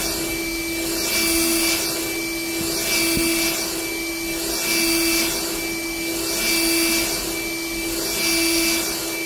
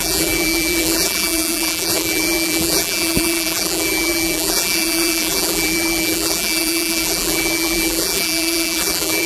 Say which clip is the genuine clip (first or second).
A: first